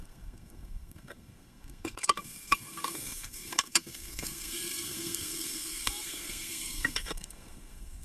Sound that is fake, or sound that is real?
fake